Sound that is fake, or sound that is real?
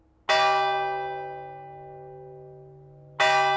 real